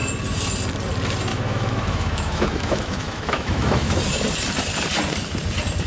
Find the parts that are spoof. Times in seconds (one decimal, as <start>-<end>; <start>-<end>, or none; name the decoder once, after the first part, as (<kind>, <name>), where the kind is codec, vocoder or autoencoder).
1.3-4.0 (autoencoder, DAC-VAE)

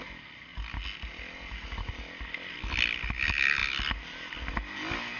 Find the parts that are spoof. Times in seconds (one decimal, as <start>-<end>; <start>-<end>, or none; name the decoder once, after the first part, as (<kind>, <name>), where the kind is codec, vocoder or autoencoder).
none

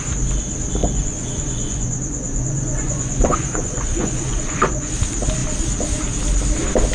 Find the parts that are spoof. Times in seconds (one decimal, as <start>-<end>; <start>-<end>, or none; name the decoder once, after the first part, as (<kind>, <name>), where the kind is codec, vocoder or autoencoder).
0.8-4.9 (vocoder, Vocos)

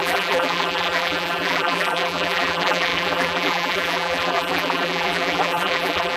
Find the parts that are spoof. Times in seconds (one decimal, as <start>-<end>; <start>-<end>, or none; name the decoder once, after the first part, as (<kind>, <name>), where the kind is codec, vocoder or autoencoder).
0.0-6.2 (vocoder, BigVGAN v2)

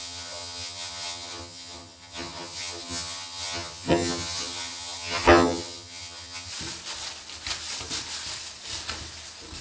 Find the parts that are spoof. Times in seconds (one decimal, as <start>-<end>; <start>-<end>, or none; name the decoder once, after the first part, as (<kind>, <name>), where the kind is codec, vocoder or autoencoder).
0.0-6.5 (vocoder, HiFi-GAN)